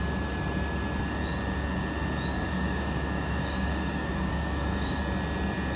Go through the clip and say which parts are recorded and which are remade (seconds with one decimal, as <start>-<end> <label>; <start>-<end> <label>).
0.0-2.3 recorded; 2.3-5.0 remade; 5.0-5.8 recorded